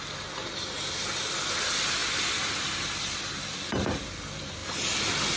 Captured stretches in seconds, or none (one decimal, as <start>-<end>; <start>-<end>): 0.0-5.4